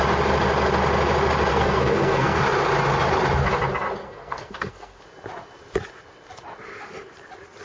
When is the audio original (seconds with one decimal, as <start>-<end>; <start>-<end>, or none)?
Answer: 0.0-1.5; 2.4-4.0; 5.0-7.6